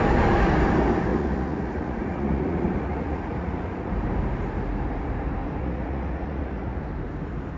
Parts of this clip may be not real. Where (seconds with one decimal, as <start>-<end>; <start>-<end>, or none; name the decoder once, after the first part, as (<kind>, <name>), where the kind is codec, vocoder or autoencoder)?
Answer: 1.1-3.9 (vocoder, Vocos); 5.6-6.8